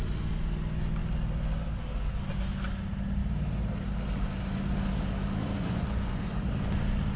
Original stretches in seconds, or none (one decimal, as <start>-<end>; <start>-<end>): 0.0-5.4; 6.5-7.2